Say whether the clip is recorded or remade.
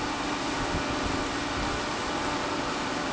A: recorded